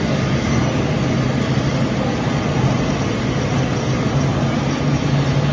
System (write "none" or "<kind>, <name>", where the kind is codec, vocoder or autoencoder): none